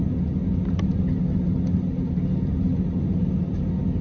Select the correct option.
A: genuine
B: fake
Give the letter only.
A